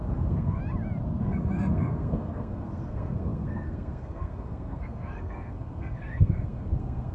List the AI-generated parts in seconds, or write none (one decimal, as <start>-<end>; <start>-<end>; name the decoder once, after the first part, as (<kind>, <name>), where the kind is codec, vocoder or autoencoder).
0.0-0.6 (codec, SNAC); 1.2-7.1